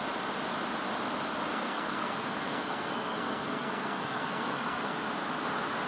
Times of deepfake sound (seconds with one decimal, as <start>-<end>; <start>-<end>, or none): 1.5-5.0